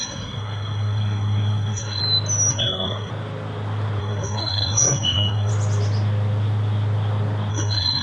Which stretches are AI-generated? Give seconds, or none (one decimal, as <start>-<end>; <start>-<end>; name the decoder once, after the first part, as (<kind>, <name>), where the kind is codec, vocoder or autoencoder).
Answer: 0.0-2.0 (codec, SNAC); 2.5-3.1; 4.0-5.5; 7.5-8.0